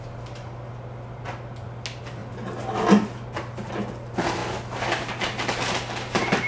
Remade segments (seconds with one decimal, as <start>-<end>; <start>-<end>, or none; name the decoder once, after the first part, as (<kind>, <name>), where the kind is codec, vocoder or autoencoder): none